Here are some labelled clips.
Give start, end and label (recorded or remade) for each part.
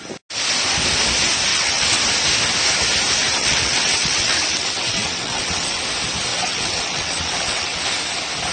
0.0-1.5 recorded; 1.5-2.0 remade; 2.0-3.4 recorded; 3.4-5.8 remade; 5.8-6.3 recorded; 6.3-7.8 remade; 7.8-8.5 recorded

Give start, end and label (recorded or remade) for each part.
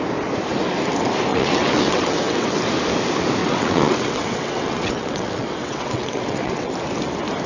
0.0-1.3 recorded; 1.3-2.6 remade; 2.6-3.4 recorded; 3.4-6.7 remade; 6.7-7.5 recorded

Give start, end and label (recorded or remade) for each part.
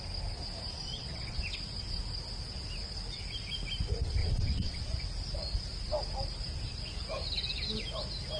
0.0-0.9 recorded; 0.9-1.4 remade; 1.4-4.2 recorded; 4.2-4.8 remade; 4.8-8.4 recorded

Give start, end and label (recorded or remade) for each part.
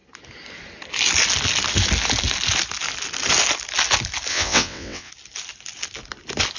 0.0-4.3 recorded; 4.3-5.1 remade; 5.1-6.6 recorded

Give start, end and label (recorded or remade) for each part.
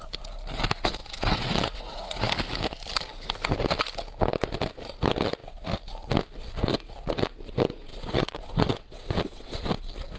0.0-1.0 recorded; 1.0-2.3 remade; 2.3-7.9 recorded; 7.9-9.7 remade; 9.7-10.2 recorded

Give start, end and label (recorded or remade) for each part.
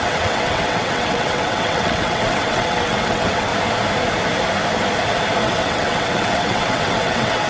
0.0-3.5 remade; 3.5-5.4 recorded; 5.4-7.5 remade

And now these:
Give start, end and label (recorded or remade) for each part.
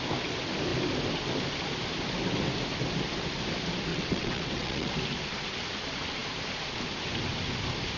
0.0-3.9 recorded; 3.9-4.9 remade; 4.9-8.0 recorded